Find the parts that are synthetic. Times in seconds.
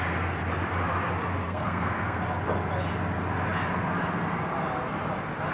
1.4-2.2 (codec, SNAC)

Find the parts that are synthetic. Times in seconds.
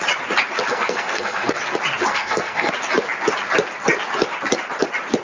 0.7-1.5 (codec, SNAC); 2.1-2.7